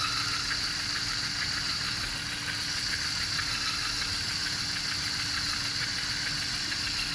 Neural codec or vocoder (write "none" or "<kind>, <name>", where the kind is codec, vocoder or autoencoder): none